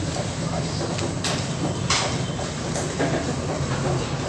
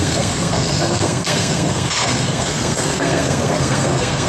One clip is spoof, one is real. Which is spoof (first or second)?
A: second